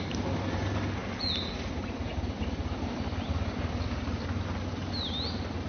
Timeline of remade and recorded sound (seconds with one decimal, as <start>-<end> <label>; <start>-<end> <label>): 0.0-5.7 recorded